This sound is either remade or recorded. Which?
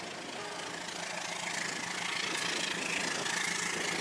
recorded